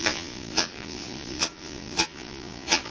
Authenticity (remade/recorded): remade